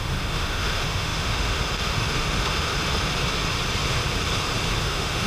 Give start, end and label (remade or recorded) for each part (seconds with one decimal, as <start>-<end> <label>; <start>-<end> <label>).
0.0-2.7 remade; 2.7-4.8 recorded; 4.8-5.3 remade